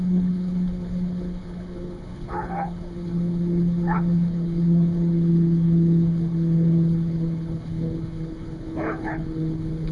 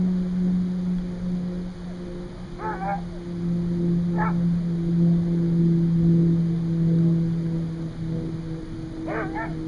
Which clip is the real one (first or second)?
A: second